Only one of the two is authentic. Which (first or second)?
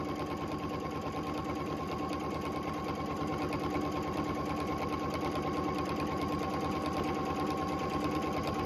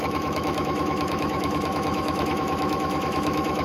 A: first